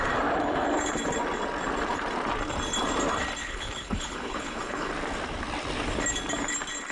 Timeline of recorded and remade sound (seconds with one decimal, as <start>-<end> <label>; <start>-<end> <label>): 0.0-3.4 recorded; 3.4-4.9 remade; 4.9-6.9 recorded